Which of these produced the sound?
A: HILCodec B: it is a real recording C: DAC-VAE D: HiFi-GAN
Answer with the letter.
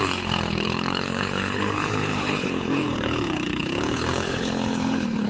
A